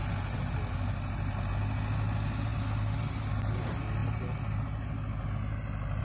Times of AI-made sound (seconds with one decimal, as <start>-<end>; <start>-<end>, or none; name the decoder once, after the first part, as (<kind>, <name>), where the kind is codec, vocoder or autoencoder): none